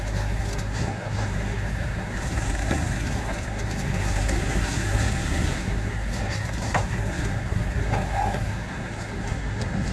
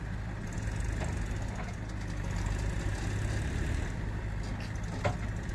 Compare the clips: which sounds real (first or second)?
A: second